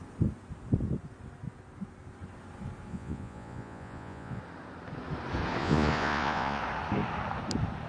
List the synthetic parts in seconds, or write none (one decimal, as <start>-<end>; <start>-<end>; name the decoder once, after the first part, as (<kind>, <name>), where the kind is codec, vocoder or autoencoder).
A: 2.9-4.4 (vocoder, Vocos); 5.6-6.6